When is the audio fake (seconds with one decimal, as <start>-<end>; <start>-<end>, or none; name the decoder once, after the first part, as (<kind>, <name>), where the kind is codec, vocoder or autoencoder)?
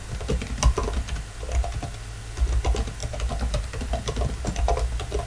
none